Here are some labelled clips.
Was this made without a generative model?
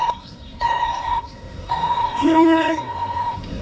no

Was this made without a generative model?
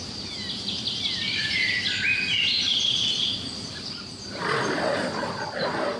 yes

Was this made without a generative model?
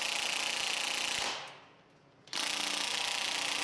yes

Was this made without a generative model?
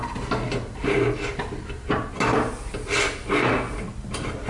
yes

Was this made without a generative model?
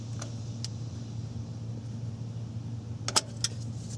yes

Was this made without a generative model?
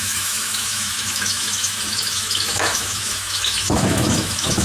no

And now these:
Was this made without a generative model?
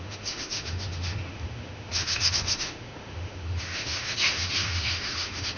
no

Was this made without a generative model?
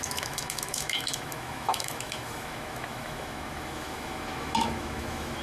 no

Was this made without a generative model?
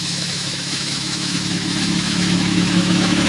no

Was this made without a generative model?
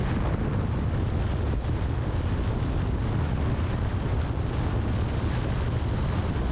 yes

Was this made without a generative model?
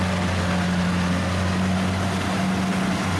yes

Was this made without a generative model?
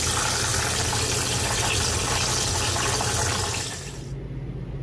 yes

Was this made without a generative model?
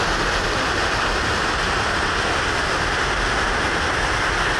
yes